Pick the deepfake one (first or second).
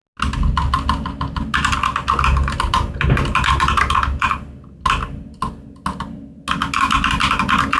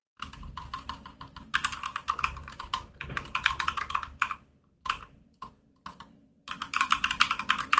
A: second